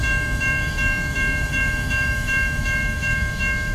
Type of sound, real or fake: fake